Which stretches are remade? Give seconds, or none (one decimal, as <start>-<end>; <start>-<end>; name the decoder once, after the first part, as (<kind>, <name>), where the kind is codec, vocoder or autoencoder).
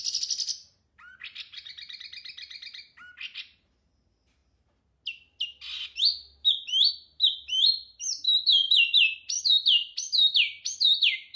none